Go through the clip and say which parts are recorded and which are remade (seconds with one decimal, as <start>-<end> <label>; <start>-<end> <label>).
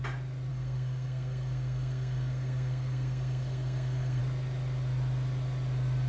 0.0-0.5 recorded; 0.5-4.2 remade; 4.2-6.1 recorded